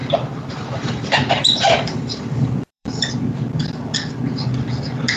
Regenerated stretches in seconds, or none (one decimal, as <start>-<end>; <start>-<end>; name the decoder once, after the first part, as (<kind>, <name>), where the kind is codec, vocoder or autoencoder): 0.0-3.1 (vocoder, BigVGAN v2)